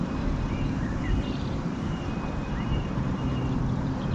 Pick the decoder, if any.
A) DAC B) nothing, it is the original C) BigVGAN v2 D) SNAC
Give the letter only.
C